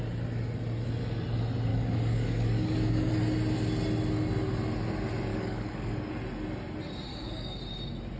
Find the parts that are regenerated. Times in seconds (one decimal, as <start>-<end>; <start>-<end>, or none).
1.7-3.1; 5.3-6.1; 7.1-7.6